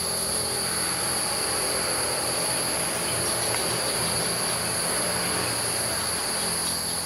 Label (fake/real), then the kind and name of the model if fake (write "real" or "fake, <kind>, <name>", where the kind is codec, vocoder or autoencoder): real